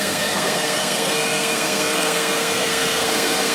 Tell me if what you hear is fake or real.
fake